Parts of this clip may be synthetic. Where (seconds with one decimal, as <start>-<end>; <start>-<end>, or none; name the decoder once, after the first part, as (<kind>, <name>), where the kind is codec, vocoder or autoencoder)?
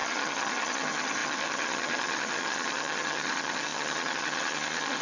0.0-5.0 (vocoder, HiFi-GAN)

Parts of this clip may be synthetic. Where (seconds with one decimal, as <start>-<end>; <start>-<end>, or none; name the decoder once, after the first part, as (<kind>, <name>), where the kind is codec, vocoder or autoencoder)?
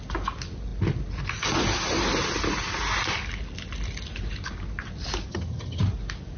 5.3-5.8 (vocoder, HiFi-GAN)